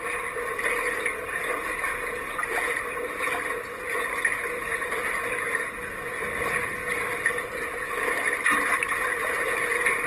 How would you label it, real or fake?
real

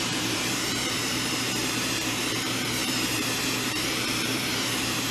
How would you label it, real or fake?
fake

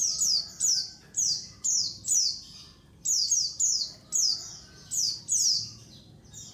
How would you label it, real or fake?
real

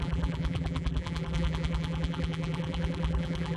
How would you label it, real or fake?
fake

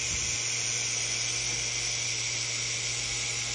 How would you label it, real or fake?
real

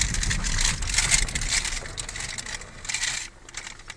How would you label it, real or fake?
real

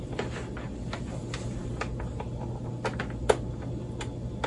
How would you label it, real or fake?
real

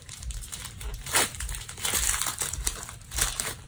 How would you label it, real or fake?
fake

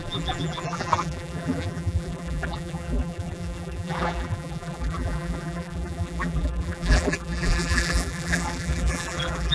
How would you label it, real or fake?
fake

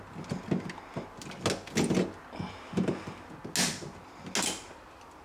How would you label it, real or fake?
real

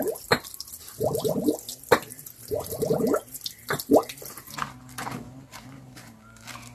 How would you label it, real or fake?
fake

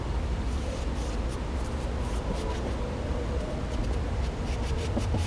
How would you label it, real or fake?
fake